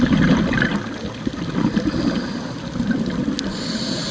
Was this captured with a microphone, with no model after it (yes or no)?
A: yes